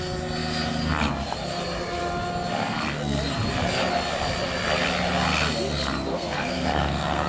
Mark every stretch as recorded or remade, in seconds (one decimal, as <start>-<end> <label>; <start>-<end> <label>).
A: 0.0-6.1 recorded; 6.1-7.3 remade